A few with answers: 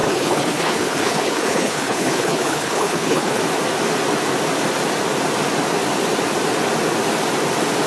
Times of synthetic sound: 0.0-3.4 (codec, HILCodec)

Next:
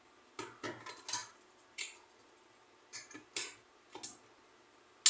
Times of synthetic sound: none

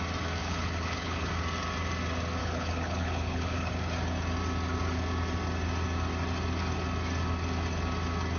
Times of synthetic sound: 0.4-1.3 (codec, HILCodec); 2.4-3.7

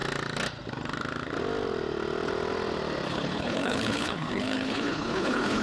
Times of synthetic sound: 3.1-5.6 (codec, HILCodec)

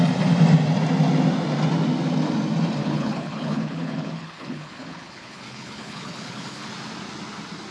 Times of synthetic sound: 2.8-6.7 (codec, HILCodec)

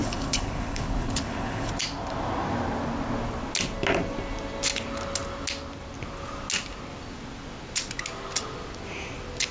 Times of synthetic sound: 0.0-1.7 (codec, HILCodec)

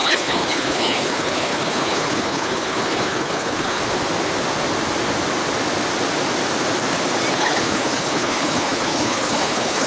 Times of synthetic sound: 0.0-3.8 (codec, HILCodec); 7.3-9.9

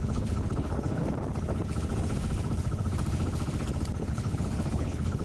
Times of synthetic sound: 0.0-1.0 (codec, HILCodec); 4.1-5.2